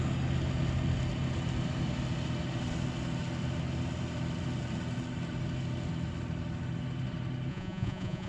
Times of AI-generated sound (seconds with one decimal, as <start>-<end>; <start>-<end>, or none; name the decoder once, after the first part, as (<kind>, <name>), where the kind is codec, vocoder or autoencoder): 7.5-8.3 (vocoder, Vocos)